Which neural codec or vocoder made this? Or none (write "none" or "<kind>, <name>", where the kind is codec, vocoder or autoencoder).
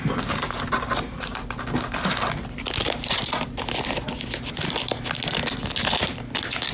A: none